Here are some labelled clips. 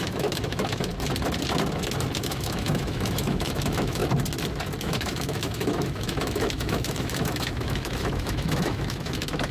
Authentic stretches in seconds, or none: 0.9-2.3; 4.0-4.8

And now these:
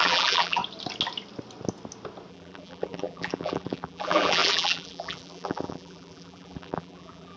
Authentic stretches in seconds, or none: 0.6-2.3

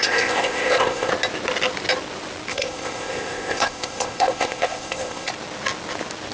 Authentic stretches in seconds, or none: 1.1-2.5; 5.3-6.3

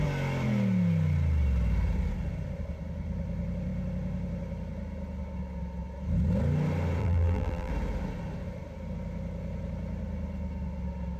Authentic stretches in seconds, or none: 0.0-7.0; 7.7-11.2